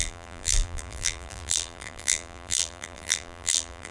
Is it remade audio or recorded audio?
remade